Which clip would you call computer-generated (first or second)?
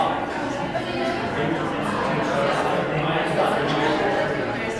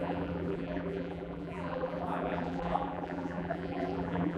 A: second